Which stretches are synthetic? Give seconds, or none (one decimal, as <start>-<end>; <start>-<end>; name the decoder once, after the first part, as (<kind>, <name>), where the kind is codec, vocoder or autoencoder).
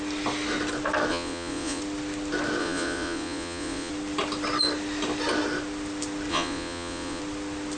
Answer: 1.1-1.8 (vocoder, Vocos); 2.6-3.9; 6.3-7.2